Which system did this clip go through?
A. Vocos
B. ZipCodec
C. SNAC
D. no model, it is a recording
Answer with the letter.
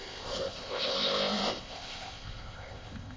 B